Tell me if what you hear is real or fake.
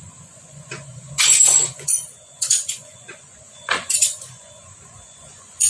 fake